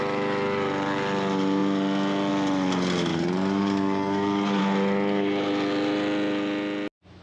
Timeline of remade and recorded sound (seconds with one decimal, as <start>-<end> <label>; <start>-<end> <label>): 0.0-3.1 recorded; 3.1-4.6 remade; 4.6-7.2 recorded